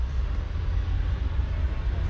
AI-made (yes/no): no